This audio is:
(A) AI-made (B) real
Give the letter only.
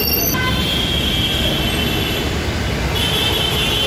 B